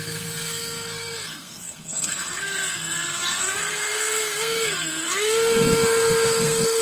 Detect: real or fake fake